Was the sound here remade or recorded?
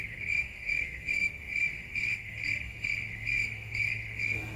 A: remade